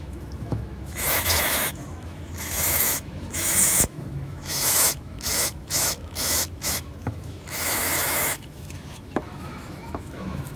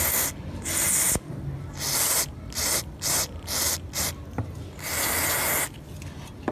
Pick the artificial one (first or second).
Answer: first